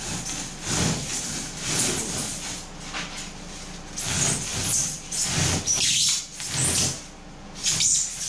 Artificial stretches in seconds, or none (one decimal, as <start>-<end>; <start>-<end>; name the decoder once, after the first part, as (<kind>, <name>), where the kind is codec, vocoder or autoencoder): 1.1-3.4 (vocoder, BigVGAN v2); 4.5-6.2; 7.6-8.3